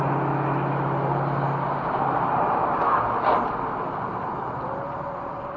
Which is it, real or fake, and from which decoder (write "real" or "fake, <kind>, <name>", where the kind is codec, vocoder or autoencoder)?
real